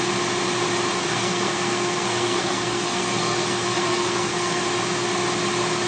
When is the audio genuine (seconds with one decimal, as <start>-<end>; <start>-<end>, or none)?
0.0-1.1; 4.6-5.9